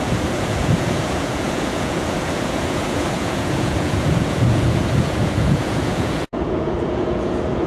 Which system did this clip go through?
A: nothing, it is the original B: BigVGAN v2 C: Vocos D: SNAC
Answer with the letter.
C